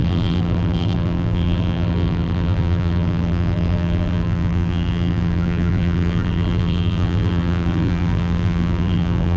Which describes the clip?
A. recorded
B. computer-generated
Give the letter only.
B